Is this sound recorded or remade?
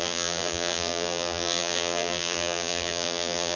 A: remade